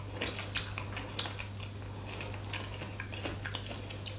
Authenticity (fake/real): real